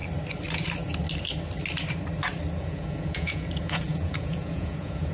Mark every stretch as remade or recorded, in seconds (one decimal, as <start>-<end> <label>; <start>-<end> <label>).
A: 0.0-2.6 recorded; 2.6-5.1 remade